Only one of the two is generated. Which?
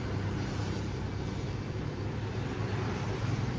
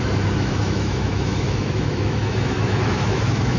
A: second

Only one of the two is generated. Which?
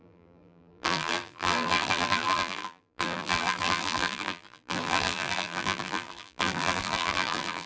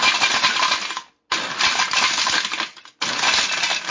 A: first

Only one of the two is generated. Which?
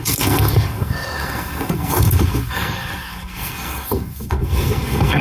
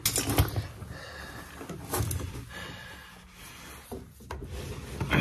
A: first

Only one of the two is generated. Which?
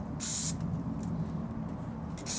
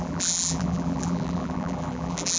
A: second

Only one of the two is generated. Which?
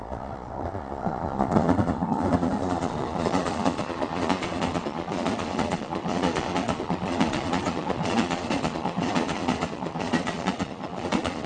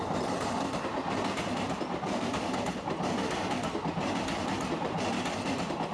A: first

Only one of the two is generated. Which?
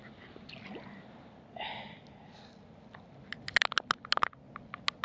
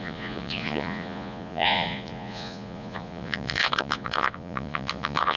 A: second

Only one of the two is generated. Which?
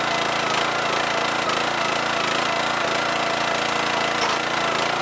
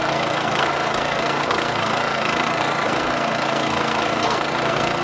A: second